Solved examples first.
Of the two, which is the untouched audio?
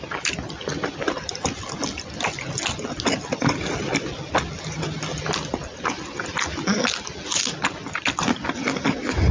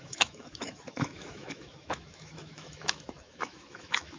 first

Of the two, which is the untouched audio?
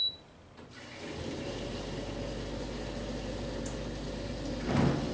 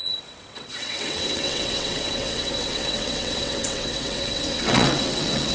first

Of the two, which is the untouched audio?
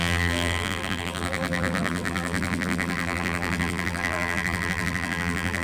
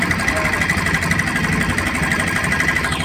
second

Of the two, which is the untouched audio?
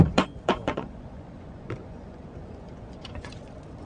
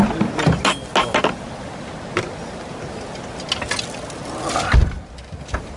second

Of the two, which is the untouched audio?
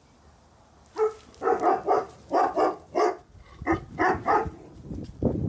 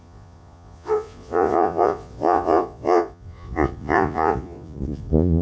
first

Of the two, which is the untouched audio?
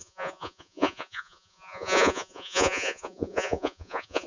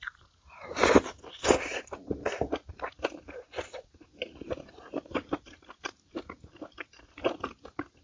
second